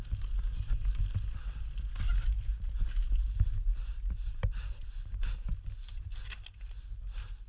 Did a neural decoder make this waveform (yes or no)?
no